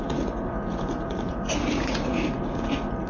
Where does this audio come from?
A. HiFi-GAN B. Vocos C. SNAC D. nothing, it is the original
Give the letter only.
B